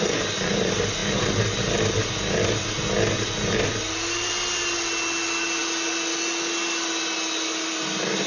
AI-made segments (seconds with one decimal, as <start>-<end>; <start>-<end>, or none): none